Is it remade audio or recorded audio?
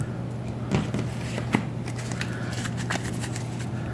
recorded